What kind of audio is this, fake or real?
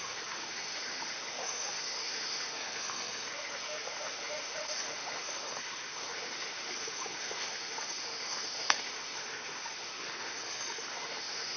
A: fake